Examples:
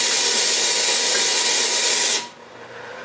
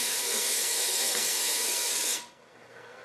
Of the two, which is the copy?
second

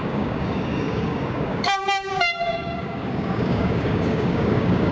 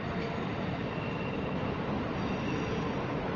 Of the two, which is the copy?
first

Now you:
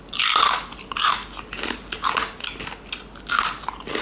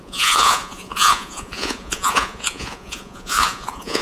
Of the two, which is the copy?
second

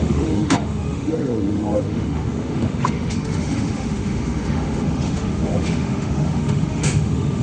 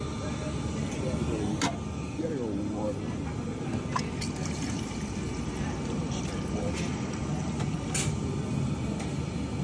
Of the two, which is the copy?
first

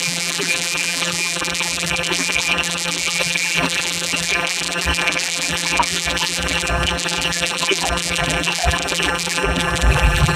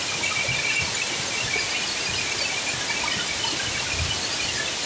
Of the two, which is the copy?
first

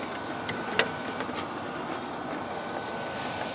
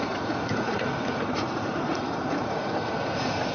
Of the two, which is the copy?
second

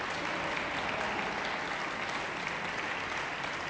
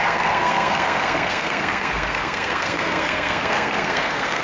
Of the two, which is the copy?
second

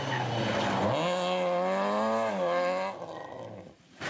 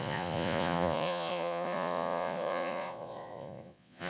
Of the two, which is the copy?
second